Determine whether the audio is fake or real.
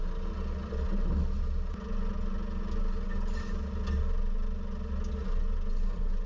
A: real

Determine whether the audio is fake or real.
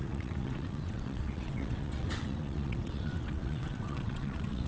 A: fake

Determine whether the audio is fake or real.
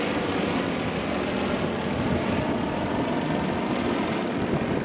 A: real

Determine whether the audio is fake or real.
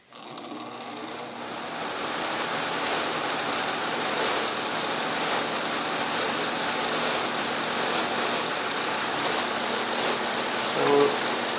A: real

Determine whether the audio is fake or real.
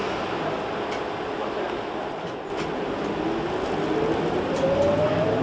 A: real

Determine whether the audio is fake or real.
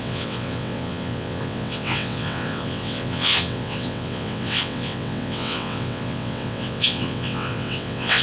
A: fake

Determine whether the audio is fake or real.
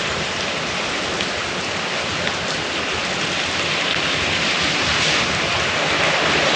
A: real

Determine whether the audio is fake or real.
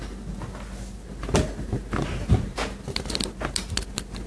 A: real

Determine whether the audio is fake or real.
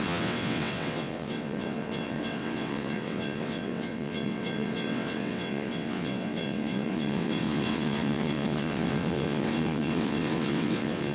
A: fake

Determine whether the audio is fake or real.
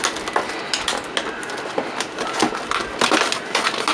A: real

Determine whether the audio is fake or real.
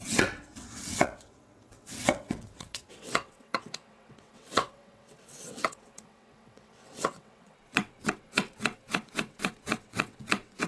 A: fake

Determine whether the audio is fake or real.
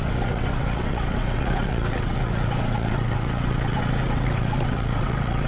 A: fake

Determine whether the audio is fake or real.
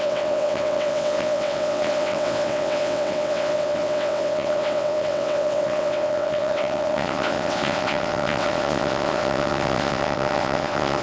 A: fake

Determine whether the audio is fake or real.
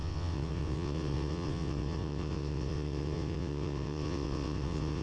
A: fake